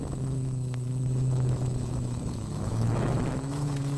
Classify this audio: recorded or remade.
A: remade